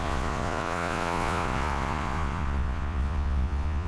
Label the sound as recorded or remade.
remade